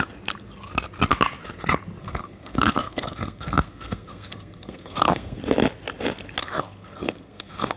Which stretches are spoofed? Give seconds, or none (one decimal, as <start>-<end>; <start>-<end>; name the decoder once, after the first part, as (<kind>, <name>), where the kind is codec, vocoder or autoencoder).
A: 2.0-5.4 (codec, SNAC); 6.4-7.8